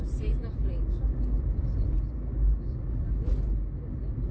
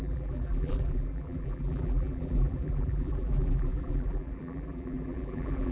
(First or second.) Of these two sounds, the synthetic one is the second